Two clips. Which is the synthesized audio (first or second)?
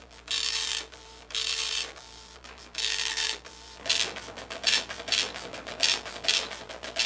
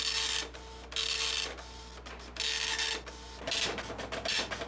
first